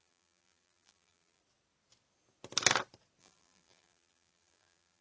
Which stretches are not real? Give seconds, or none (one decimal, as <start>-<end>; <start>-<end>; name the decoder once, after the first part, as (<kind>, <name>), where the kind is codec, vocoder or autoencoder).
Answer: 0.0-1.4 (vocoder, BigVGAN v2); 3.2-5.0